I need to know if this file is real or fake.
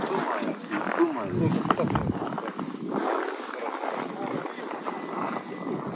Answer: real